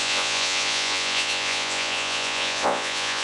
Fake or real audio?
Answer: fake